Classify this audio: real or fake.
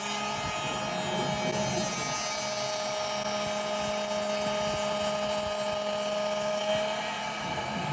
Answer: real